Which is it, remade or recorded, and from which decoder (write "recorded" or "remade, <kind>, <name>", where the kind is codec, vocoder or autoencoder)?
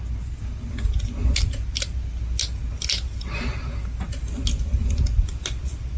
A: recorded